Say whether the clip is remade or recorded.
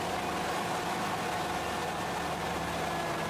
recorded